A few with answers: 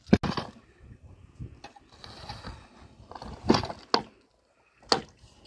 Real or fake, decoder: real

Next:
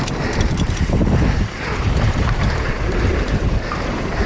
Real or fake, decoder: fake, vocoder, BigVGAN v2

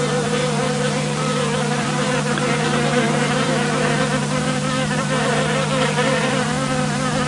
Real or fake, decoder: fake, vocoder, BigVGAN v2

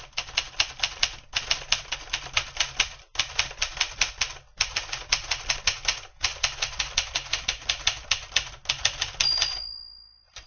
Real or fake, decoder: real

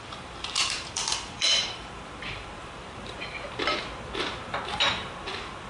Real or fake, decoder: fake, vocoder, BigVGAN v2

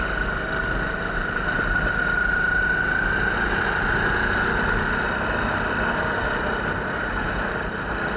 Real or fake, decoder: real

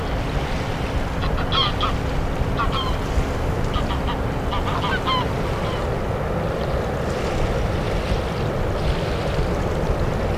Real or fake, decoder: real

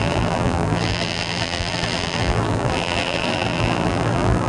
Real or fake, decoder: fake, vocoder, BigVGAN v2